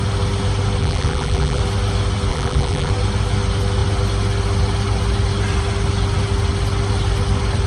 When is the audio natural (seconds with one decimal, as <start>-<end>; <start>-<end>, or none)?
0.0-0.8; 1.6-2.3; 2.9-7.7